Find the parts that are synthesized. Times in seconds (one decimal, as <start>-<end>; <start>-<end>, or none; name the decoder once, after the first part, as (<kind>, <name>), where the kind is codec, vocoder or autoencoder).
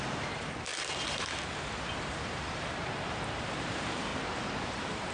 0.0-0.7 (vocoder, BigVGAN v2); 2.0-4.1; 4.6-5.1